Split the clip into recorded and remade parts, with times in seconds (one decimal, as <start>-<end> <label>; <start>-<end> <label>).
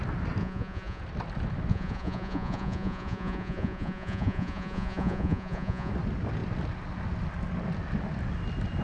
0.0-0.4 recorded; 0.4-1.0 remade; 1.0-1.7 recorded; 1.7-5.9 remade; 5.9-8.8 recorded